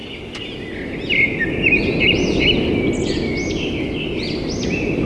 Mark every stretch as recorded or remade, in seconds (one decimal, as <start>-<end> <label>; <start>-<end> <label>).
0.0-5.0 recorded

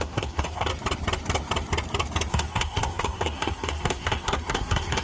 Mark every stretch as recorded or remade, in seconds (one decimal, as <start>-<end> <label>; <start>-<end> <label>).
0.0-0.7 remade; 0.7-2.3 recorded; 2.3-5.0 remade

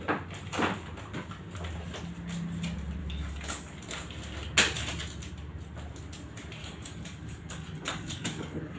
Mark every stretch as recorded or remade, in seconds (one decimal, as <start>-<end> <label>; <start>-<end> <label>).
0.0-3.0 recorded; 3.0-3.8 remade; 3.8-6.6 recorded; 6.6-8.8 remade

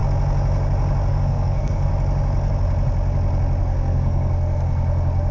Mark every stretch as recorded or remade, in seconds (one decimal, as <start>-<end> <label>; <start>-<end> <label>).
0.0-1.1 recorded; 1.1-1.9 remade; 1.9-3.6 recorded; 3.6-5.3 remade